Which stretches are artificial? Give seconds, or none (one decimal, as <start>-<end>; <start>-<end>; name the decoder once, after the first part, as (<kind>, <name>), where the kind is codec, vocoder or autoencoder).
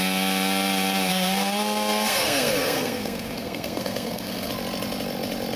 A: 1.1-4.5 (codec, SNAC)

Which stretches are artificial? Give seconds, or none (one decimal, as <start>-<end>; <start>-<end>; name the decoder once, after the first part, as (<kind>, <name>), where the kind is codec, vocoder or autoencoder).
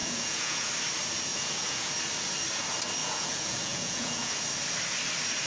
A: 0.0-0.7 (vocoder, Vocos); 1.3-1.9; 3.0-4.3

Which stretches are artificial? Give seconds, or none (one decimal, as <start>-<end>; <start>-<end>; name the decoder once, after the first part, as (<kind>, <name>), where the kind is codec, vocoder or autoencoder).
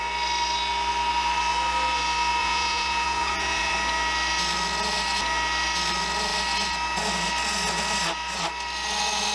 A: 2.4-3.7 (vocoder, Vocos)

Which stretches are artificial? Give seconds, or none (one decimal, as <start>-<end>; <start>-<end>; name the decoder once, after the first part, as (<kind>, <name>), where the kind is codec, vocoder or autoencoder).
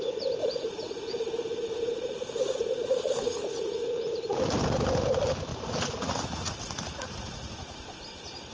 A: 0.4-4.1 (vocoder, Vocos); 5.5-8.0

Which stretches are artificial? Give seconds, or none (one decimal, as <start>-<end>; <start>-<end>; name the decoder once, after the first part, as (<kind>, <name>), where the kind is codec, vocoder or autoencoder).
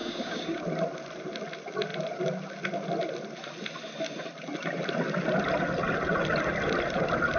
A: 0.0-0.6 (codec, DAC)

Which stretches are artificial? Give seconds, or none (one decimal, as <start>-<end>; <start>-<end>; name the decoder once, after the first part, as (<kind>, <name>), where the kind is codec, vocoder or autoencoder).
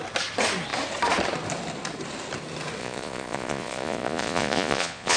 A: 2.8-5.2 (vocoder, Vocos)